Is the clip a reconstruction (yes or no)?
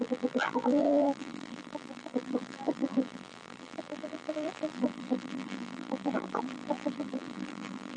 yes